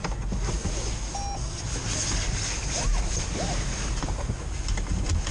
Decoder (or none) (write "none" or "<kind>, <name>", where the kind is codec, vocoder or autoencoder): none